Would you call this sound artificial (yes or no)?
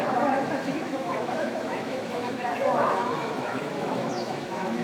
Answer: yes